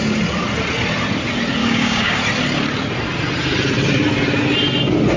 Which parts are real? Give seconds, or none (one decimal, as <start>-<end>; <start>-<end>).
0.0-1.6; 2.2-5.2